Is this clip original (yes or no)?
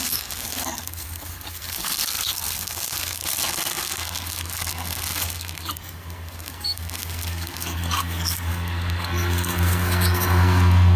no